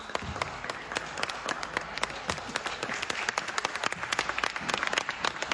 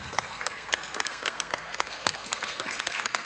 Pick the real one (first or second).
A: first